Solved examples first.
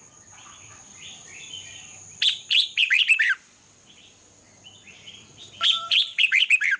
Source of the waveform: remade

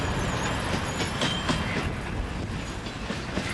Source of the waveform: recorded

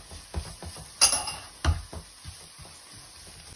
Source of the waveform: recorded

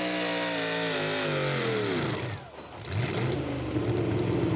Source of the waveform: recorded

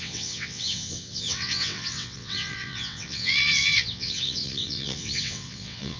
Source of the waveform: remade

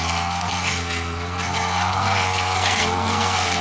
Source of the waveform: remade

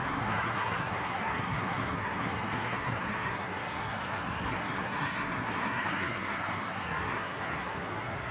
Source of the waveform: remade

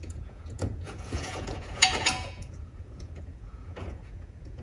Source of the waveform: remade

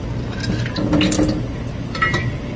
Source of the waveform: recorded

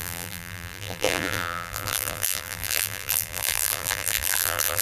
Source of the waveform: remade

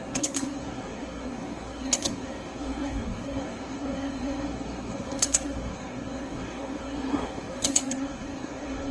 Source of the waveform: remade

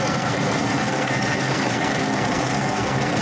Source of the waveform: remade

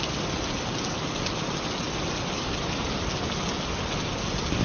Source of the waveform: recorded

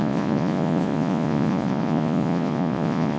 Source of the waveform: remade